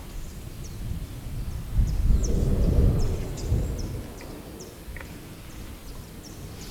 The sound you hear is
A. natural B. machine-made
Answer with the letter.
A